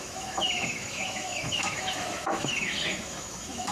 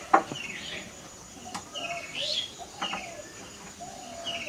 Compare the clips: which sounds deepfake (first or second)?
first